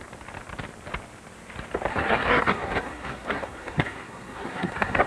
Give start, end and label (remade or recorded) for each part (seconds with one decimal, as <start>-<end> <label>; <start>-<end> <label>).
0.0-1.9 recorded; 1.9-5.1 remade